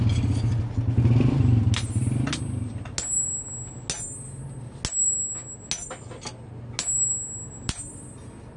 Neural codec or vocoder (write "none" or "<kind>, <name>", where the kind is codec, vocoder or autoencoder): none